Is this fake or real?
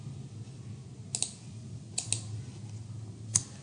real